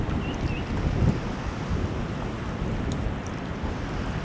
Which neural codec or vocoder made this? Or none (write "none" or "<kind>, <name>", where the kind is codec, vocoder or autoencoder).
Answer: none